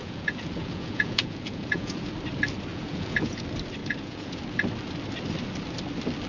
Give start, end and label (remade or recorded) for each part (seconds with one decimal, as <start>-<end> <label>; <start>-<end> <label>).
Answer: 0.0-2.1 remade; 2.1-2.7 recorded; 2.7-3.4 remade; 3.4-3.8 recorded; 3.8-4.4 remade; 4.4-6.3 recorded